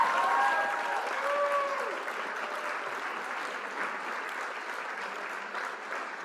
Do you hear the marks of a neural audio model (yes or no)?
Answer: no